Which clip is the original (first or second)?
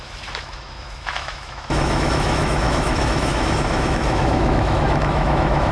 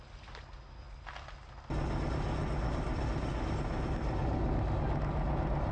second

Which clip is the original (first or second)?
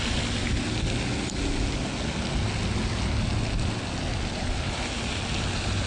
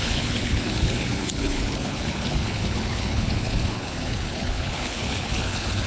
first